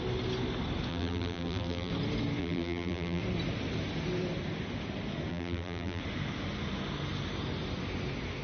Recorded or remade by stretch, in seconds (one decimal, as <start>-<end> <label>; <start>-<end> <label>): 0.0-0.9 recorded; 0.9-1.9 remade; 1.9-2.4 recorded; 2.4-3.2 remade; 3.2-5.3 recorded; 5.3-6.0 remade; 6.0-8.4 recorded